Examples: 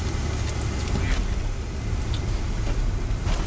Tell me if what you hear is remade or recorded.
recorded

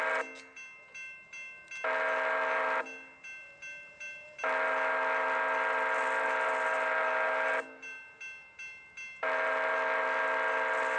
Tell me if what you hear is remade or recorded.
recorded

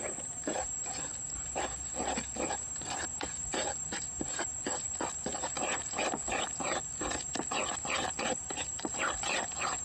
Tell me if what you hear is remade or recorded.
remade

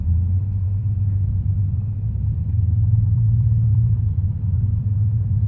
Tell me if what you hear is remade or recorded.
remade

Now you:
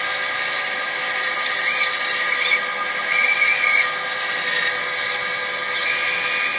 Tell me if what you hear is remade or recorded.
recorded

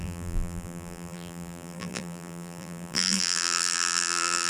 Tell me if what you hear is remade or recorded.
remade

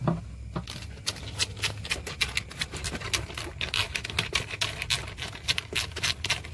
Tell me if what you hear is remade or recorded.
recorded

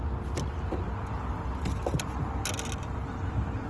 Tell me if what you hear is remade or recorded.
recorded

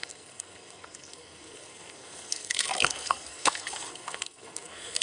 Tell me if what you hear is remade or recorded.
remade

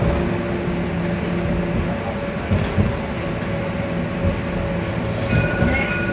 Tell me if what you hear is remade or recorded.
recorded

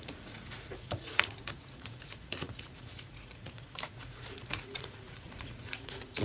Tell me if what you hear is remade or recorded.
remade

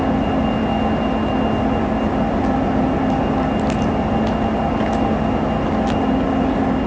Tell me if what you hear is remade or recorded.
recorded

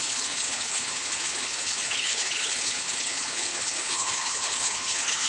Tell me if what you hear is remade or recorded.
remade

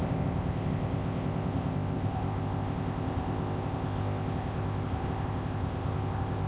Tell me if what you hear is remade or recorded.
remade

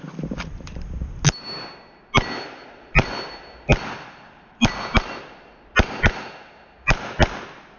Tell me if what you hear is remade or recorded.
recorded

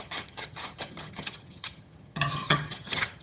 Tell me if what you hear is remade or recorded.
remade